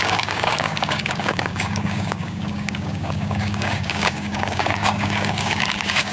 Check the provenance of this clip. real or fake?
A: fake